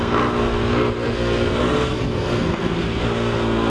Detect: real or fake fake